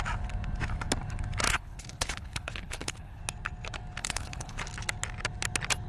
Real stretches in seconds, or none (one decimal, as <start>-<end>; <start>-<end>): 0.0-1.5; 3.2-4.0; 4.6-5.9